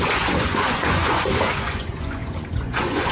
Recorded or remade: remade